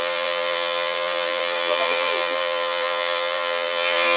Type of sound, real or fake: fake